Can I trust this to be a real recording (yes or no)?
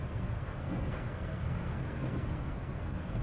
no